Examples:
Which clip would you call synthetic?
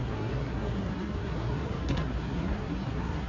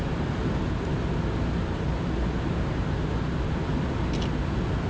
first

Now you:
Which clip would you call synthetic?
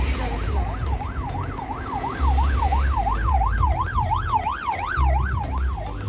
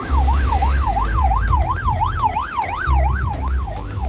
second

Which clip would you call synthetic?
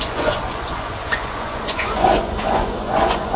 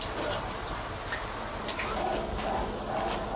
first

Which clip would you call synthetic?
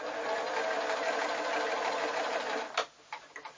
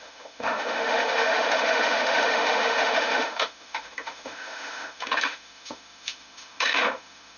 second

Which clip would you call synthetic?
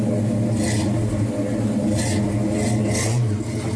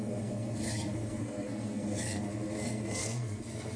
second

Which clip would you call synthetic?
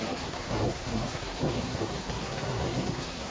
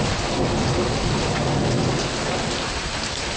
first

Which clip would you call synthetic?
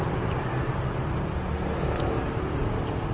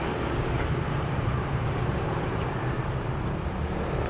second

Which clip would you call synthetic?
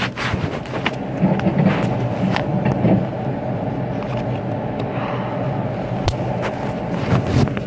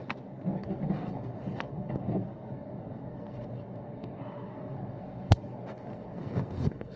second